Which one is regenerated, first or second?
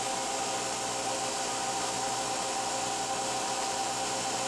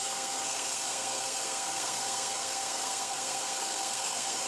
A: second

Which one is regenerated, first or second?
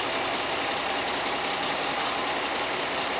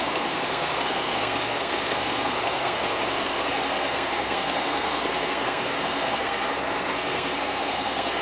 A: second